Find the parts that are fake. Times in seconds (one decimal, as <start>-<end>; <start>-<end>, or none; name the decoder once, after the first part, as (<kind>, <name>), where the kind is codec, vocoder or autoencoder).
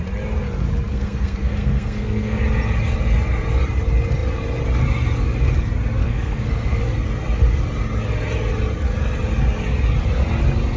0.9-2.4 (codec, SNAC); 6.0-6.8